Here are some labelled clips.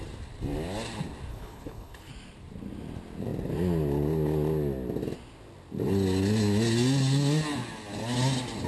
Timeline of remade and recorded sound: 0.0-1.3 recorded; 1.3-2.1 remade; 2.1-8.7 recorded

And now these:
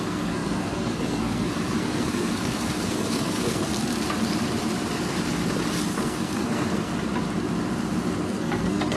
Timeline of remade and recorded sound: 0.0-3.7 remade; 3.7-5.9 recorded; 5.9-6.9 remade; 6.9-8.2 recorded; 8.2-9.0 remade

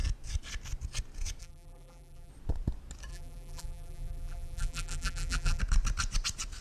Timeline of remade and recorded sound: 0.0-1.4 recorded; 1.4-2.3 remade; 2.3-3.1 recorded; 3.1-5.6 remade; 5.6-6.6 recorded